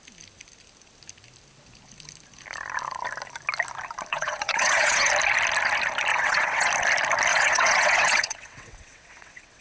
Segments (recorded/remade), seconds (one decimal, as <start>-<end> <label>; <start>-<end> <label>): 0.0-4.1 recorded; 4.1-5.1 remade; 5.1-6.1 recorded; 6.1-6.7 remade; 6.7-7.3 recorded; 7.3-9.6 remade